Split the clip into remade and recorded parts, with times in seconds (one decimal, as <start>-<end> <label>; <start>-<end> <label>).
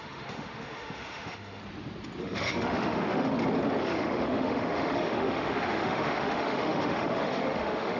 0.0-1.6 remade; 1.6-2.2 recorded; 2.2-3.3 remade; 3.3-3.8 recorded; 3.8-8.0 remade